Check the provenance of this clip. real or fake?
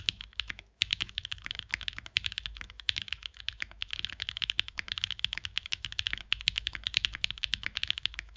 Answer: fake